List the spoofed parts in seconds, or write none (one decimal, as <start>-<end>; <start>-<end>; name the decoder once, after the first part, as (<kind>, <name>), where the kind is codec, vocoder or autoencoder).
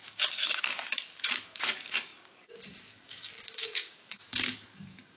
0.0-5.2 (codec, DAC)